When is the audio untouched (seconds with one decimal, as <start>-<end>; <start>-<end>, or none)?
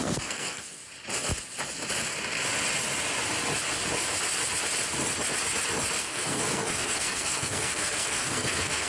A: 0.8-6.0